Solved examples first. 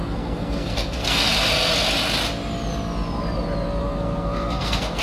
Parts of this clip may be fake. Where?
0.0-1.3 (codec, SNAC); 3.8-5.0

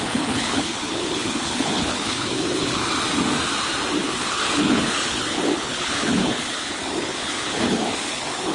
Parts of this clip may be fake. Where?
0.0-2.9 (codec, HILCodec); 4.0-8.5

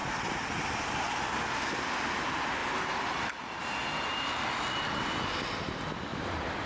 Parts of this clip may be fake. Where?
2.6-3.6 (vocoder, BigVGAN v2); 6.1-6.7

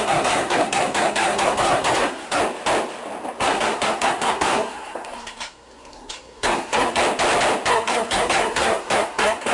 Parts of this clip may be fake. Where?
0.0-2.4 (codec, SNAC); 3.4-7.0; 7.7-9.5